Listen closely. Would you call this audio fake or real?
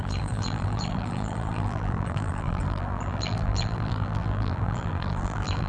fake